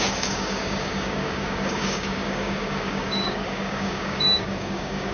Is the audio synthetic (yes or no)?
yes